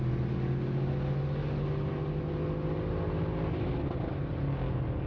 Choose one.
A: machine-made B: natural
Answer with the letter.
B